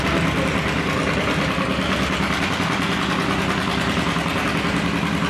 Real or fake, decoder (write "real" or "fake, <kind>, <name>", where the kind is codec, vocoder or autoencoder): real